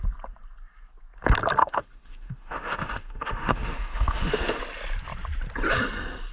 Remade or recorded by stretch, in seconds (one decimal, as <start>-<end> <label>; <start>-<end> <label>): 0.0-1.6 recorded; 1.6-4.6 remade; 4.6-6.3 recorded